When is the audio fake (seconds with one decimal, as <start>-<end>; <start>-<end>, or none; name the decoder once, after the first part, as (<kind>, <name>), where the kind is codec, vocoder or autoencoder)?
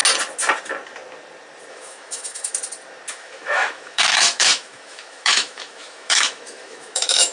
1.7-2.5 (autoencoder, DAC-VAE); 3.1-7.3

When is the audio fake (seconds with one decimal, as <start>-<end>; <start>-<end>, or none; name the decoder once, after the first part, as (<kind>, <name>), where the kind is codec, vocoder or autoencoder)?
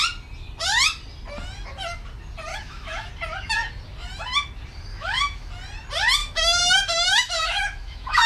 2.5-3.1 (autoencoder, DAC-VAE); 4.9-5.5; 6.2-8.3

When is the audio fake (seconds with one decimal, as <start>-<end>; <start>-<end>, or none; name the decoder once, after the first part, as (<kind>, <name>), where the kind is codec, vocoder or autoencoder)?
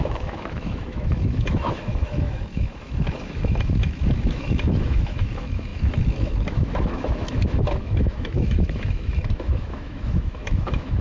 0.0-11.0 (autoencoder, DAC-VAE)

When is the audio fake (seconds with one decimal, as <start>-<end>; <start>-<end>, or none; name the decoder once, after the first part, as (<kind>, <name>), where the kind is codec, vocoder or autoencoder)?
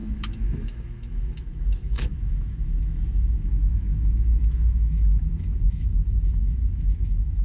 0.0-7.4 (autoencoder, DAC-VAE)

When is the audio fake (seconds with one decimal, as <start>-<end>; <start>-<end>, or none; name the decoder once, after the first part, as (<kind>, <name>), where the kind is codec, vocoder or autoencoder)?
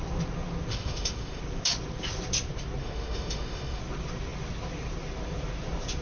0.7-1.4 (autoencoder, DAC-VAE); 2.8-3.8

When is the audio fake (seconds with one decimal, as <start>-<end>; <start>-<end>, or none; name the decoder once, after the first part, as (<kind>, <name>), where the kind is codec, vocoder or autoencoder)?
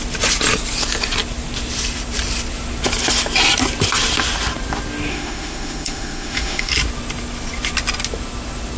5.1-6.7 (autoencoder, DAC-VAE)